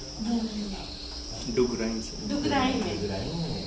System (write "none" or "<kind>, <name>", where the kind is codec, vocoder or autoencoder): none